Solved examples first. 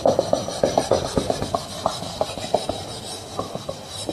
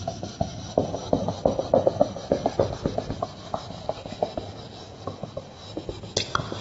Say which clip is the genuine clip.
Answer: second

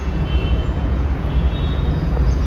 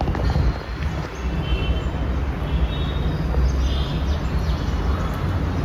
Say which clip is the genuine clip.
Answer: second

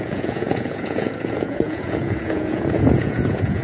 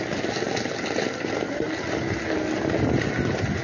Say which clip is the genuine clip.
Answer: second